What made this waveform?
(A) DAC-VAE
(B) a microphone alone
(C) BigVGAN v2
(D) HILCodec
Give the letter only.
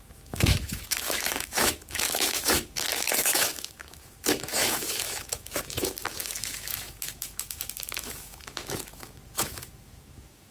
A